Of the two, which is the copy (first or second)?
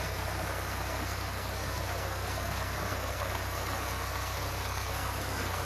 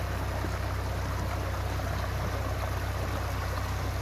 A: first